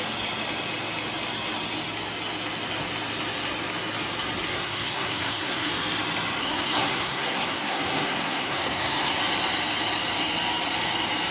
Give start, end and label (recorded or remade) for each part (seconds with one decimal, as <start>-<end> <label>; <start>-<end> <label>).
0.0-4.5 recorded; 4.5-5.7 remade; 5.7-6.4 recorded; 6.4-9.2 remade; 9.2-11.3 recorded